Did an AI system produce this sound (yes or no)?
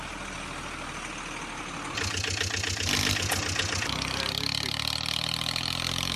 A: no